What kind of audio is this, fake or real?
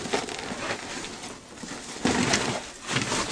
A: real